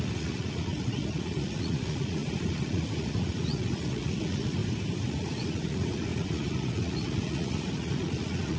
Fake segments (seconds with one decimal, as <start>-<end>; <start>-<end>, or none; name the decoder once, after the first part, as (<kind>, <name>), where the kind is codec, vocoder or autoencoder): 0.0-4.6 (vocoder, Vocos); 5.1-8.6